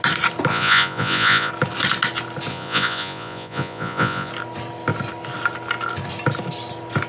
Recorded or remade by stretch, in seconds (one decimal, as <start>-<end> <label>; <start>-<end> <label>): 0.0-0.5 recorded; 0.5-1.5 remade; 1.5-2.5 recorded; 2.5-4.3 remade; 4.3-7.1 recorded